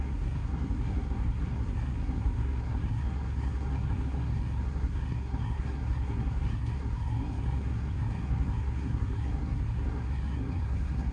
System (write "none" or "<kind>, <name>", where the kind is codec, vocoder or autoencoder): codec, SNAC